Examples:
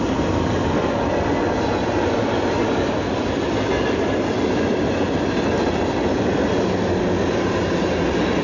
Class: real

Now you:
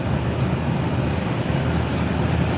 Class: real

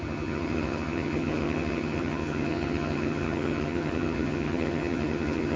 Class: fake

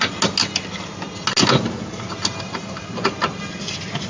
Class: real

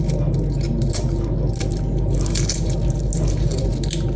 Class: real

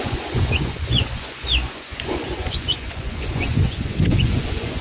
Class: fake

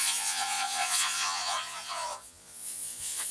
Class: fake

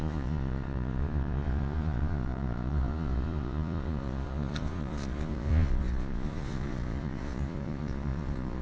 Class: fake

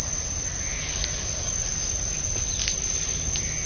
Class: real